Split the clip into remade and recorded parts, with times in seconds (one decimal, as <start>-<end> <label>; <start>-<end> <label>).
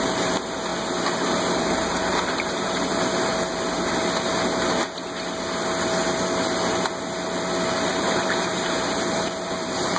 0.0-0.7 remade; 0.7-1.6 recorded; 1.6-3.3 remade; 3.3-7.9 recorded; 7.9-10.0 remade